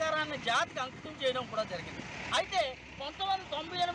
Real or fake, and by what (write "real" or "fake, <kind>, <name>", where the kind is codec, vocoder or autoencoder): real